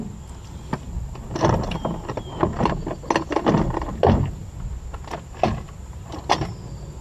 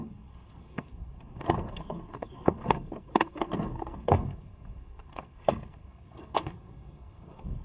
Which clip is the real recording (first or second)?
first